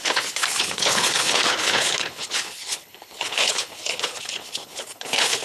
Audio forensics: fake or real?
fake